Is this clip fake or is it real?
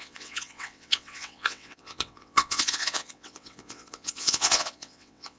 fake